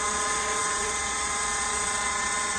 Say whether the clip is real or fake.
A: fake